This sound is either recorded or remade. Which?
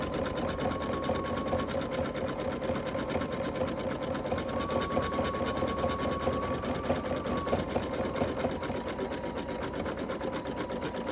recorded